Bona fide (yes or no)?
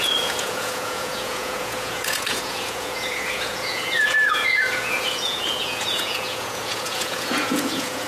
no